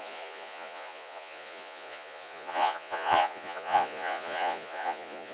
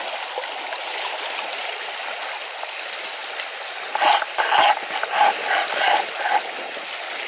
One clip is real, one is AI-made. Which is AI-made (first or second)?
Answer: first